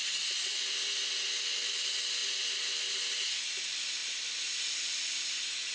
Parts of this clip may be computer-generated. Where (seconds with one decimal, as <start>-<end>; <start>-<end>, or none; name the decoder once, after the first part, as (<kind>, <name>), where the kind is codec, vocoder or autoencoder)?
none